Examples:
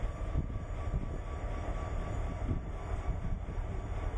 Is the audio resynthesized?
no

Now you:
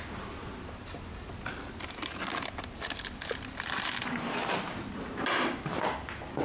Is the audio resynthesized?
no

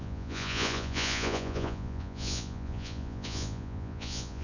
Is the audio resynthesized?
yes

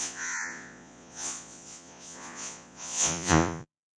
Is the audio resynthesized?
yes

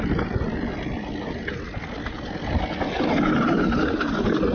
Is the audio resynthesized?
no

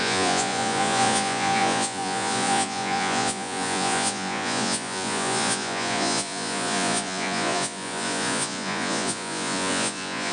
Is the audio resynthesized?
yes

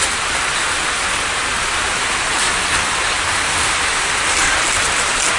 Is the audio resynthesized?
no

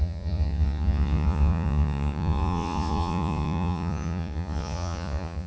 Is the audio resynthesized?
yes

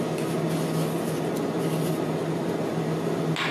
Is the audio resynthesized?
no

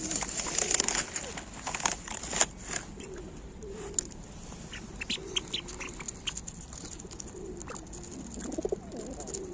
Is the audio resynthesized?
no